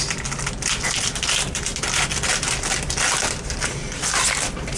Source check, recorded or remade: recorded